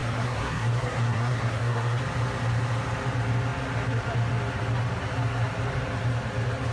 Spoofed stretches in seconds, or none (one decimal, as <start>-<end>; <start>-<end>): 0.0-2.0